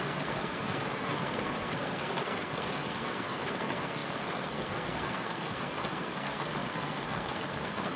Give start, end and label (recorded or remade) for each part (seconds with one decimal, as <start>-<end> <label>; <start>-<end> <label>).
0.0-8.0 remade